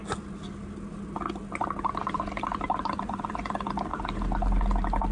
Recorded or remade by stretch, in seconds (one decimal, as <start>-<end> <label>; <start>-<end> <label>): 0.0-5.1 recorded